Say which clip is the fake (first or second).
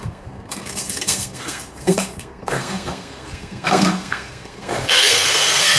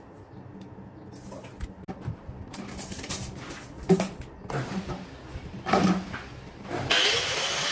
first